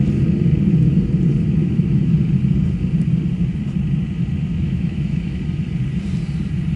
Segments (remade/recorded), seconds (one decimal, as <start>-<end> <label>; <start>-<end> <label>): 0.0-1.6 recorded; 1.6-2.1 remade; 2.1-4.5 recorded; 4.5-5.4 remade; 5.4-6.8 recorded